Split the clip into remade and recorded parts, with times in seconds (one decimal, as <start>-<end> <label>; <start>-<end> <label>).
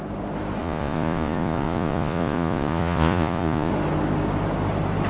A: 0.0-0.6 recorded; 0.6-3.7 remade; 3.7-5.1 recorded